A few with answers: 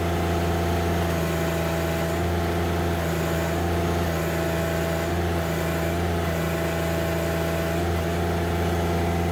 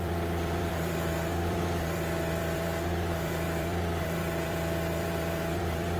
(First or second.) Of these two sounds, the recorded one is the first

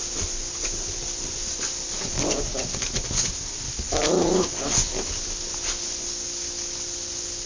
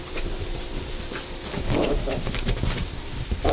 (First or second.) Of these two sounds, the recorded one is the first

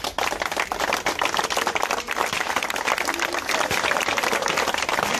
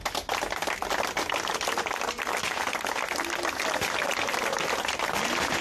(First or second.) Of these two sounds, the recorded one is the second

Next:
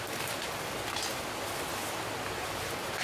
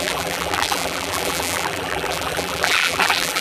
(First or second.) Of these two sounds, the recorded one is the first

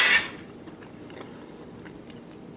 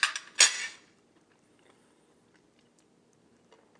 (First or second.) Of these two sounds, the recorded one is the second